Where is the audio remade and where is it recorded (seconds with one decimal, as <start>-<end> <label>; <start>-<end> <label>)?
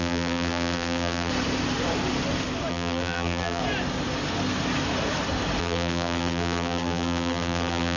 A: 0.0-1.3 remade; 1.3-2.7 recorded; 2.7-3.6 remade; 3.6-5.6 recorded; 5.6-8.0 remade